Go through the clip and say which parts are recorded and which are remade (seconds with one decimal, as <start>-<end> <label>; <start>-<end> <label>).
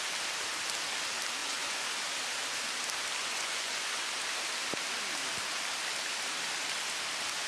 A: 0.0-1.4 recorded; 1.4-1.9 remade; 1.9-3.2 recorded; 3.2-4.1 remade; 4.1-7.5 recorded